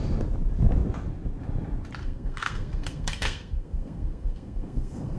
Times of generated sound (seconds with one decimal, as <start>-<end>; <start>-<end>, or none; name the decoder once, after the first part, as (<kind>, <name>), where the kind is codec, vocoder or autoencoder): 2.0-5.2 (codec, SNAC)